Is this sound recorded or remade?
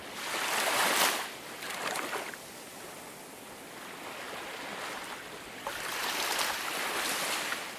recorded